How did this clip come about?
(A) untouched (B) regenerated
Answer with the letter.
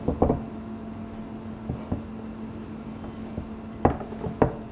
A